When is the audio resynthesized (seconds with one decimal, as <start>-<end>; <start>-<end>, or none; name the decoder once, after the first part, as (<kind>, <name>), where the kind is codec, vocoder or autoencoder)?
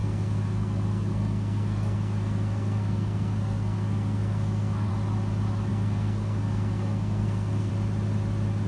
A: 0.0-4.9 (codec, SNAC); 5.7-7.7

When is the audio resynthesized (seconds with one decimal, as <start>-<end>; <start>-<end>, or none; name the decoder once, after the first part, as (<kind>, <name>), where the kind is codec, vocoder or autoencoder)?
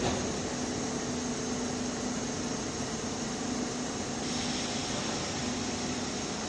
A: none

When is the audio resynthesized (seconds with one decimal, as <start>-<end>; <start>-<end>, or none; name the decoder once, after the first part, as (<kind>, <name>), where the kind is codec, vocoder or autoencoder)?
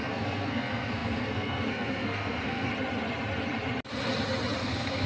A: 0.0-2.7 (codec, SNAC); 4.6-5.1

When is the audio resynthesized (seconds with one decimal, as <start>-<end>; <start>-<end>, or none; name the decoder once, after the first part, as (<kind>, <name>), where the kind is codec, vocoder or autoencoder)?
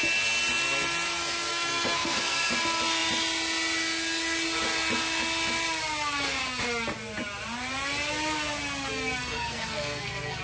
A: 1.5-2.5 (codec, SNAC); 9.2-10.4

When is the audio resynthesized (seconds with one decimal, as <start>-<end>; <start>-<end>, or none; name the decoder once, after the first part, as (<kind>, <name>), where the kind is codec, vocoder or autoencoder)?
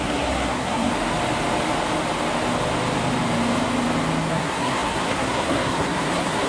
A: 0.0-0.9 (codec, SNAC); 4.3-6.5